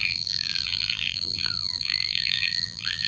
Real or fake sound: fake